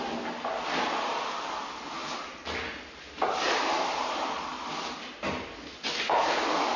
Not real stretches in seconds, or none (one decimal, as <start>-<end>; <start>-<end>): none

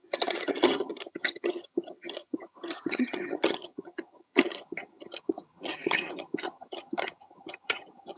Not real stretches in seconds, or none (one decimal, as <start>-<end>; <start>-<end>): 0.0-8.2

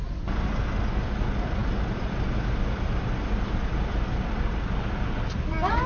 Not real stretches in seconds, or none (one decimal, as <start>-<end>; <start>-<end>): none

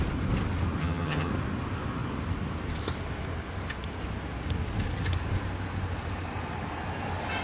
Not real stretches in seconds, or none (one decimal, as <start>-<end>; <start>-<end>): 0.8-1.3

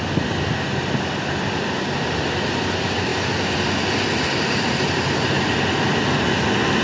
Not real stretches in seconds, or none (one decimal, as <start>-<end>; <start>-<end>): none

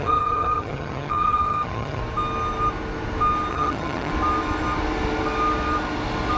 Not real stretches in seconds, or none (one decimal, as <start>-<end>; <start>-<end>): 0.0-2.0; 3.5-4.1

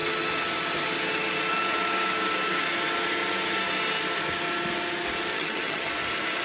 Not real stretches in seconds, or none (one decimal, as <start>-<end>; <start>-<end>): 5.3-5.9